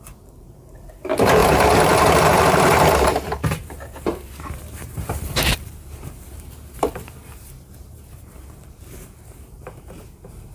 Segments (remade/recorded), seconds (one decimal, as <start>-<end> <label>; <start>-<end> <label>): 0.0-10.5 remade